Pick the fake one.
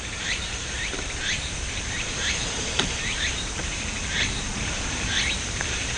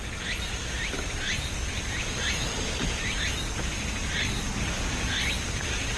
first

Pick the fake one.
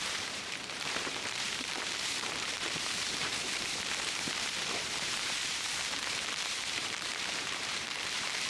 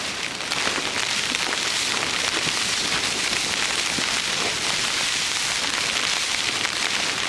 first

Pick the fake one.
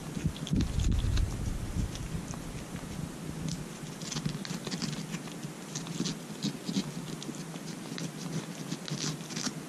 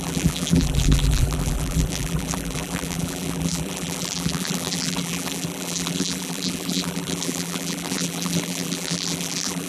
second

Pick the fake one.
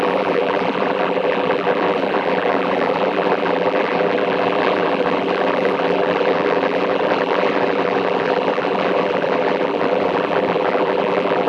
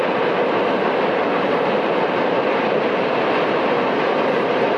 first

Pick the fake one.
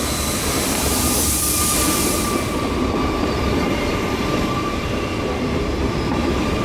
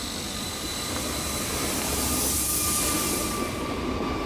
first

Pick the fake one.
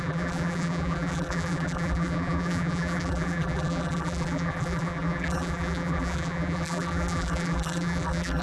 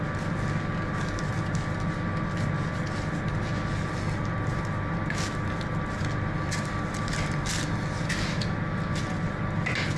first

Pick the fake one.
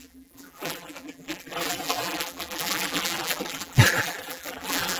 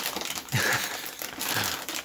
first